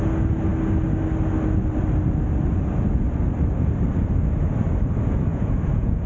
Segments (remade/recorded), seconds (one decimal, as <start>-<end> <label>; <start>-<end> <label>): 0.0-5.3 recorded; 5.3-6.1 remade